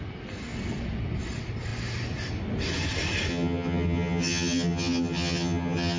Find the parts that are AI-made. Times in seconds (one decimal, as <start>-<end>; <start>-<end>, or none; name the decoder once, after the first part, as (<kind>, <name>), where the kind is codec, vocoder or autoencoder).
3.3-6.0 (vocoder, HiFi-GAN)